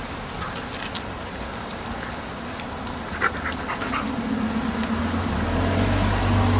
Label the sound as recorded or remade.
recorded